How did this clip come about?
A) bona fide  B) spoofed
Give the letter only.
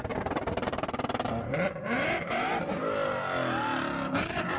A